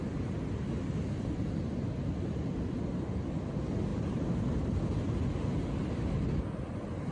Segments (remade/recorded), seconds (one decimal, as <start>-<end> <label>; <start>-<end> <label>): 0.0-7.1 recorded